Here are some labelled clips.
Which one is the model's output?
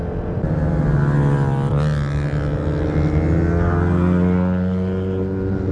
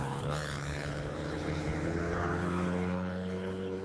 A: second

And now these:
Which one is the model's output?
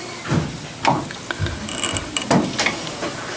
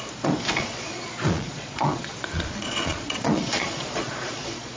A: second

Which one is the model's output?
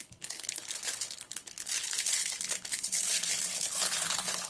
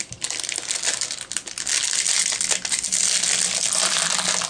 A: first